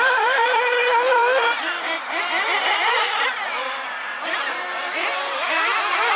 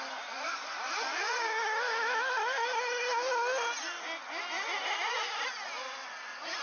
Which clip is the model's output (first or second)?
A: first